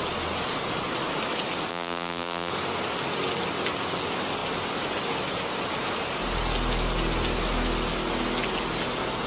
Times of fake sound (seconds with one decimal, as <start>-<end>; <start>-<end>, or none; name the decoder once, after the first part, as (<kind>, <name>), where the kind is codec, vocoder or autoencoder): 1.7-2.5 (vocoder, BigVGAN v2)